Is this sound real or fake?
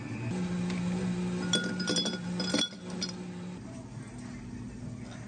real